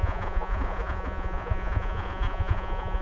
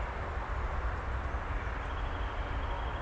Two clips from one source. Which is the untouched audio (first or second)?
second